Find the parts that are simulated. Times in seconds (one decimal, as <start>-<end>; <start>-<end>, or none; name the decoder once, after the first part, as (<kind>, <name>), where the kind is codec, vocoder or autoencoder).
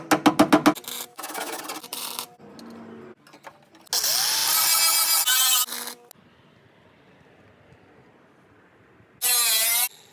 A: 1.1-1.6 (autoencoder, DAC-VAE)